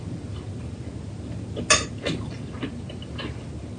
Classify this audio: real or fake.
real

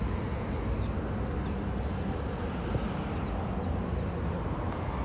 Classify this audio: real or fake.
real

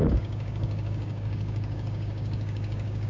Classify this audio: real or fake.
fake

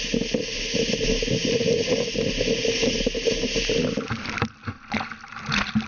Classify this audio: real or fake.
real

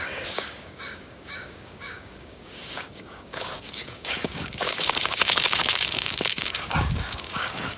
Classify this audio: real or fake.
fake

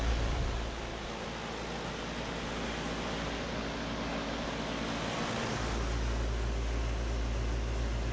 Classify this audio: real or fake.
real